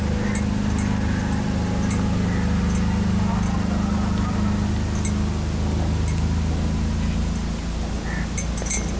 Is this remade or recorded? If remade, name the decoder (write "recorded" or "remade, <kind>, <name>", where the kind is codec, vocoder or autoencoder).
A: recorded